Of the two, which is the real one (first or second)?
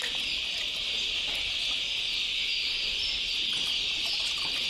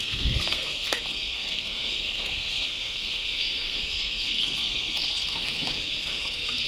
first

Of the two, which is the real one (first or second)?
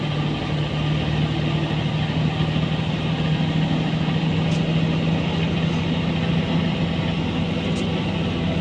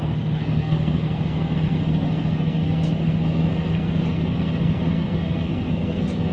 first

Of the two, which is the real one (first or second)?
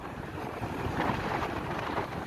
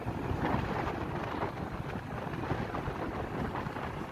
second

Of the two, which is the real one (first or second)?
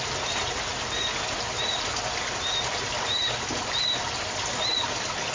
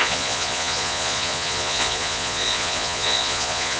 first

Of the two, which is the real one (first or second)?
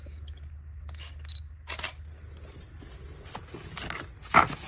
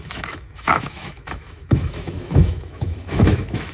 first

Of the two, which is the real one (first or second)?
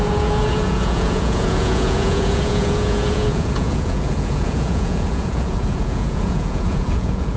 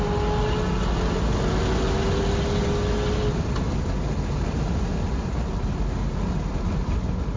second